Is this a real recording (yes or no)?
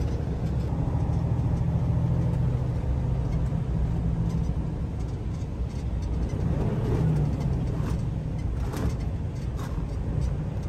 yes